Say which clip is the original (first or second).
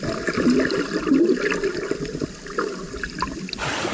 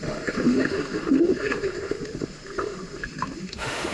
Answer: first